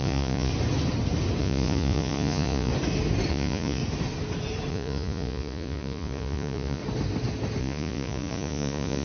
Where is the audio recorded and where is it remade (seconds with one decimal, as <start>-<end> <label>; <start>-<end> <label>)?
0.0-0.5 remade; 0.5-1.4 recorded; 1.4-2.7 remade; 2.7-3.3 recorded; 3.3-3.8 remade; 3.8-4.7 recorded; 4.7-6.8 remade; 6.8-7.6 recorded; 7.6-9.0 remade